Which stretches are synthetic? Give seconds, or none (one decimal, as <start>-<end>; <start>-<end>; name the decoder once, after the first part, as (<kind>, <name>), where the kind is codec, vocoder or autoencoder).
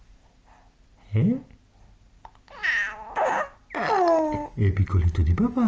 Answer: none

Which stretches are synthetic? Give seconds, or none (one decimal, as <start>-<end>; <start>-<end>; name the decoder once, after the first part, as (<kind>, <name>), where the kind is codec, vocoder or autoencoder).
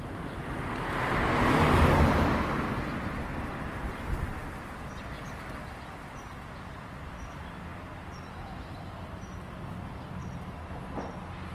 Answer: none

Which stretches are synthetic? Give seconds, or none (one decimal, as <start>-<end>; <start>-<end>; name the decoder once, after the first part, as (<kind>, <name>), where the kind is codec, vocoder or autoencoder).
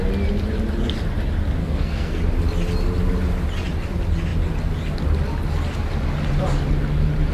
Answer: 1.6-2.2 (codec, SNAC)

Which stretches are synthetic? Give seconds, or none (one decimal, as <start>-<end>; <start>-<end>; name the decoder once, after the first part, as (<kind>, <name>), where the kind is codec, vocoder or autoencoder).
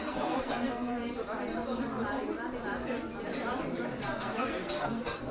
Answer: 0.0-1.0 (codec, SNAC); 4.0-5.3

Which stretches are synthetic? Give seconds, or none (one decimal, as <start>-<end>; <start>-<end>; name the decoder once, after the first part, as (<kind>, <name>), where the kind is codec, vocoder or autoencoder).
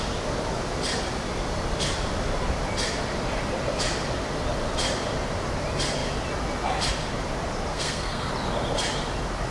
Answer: 7.7-8.3 (codec, SNAC)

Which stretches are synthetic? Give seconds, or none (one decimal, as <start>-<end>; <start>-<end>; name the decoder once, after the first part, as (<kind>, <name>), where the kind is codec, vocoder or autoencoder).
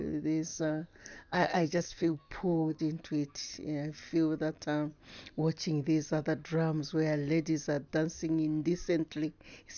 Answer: 0.5-2.8 (codec, SNAC)